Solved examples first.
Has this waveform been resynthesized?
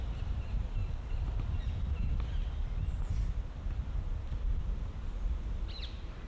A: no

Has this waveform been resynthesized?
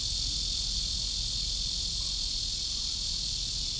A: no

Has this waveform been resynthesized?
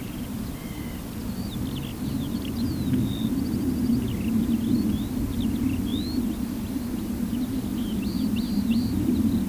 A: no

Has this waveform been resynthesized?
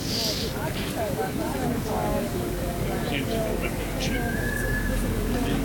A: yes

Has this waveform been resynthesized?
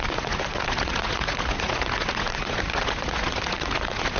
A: yes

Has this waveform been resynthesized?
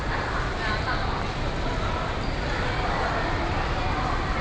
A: no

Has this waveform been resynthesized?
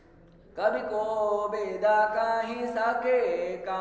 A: no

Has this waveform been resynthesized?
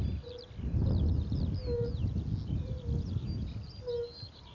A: no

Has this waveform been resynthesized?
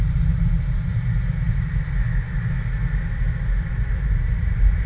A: no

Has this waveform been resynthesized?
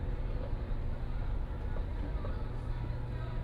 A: no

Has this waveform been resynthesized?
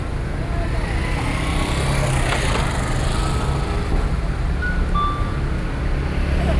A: no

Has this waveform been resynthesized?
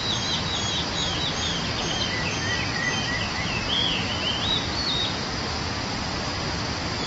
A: no